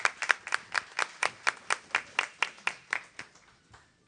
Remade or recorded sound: recorded